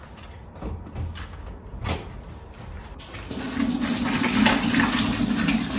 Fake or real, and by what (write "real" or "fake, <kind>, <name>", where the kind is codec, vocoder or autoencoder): real